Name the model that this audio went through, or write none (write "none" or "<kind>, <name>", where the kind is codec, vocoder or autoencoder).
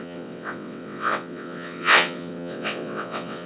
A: vocoder, WaveNeXt